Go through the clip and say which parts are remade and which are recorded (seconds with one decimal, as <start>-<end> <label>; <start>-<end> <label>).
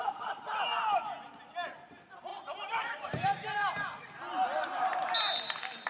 0.0-2.3 recorded; 2.3-3.7 remade; 3.7-5.9 recorded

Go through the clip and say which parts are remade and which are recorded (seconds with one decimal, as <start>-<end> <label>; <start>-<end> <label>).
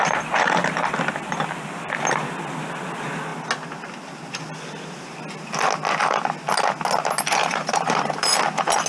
0.0-7.4 recorded; 7.4-8.4 remade; 8.4-8.9 recorded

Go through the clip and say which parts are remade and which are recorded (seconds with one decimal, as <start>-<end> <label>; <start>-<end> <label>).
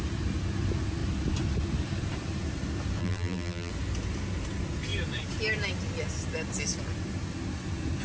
0.0-3.0 recorded; 3.0-3.7 remade; 3.7-8.0 recorded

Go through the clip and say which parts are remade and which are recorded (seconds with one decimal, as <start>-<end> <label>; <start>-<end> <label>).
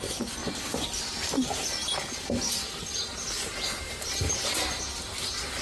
0.0-0.4 remade; 0.4-3.8 recorded; 3.8-5.6 remade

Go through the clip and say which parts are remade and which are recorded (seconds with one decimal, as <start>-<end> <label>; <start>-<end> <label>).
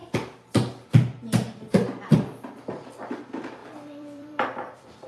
0.0-3.6 recorded; 3.6-5.1 remade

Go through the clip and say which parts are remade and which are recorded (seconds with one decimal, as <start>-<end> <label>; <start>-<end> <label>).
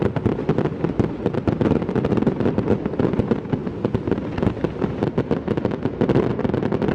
0.0-6.9 recorded